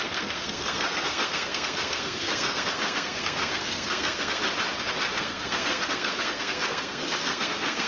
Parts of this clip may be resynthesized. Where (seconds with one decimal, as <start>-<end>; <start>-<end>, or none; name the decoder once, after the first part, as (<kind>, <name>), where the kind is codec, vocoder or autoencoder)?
0.0-4.4 (codec, SNAC); 5.2-7.9